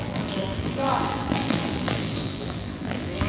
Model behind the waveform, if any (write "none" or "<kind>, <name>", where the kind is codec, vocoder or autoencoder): vocoder, BigVGAN v2